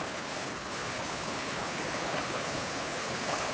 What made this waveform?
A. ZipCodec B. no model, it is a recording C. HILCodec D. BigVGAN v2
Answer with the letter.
C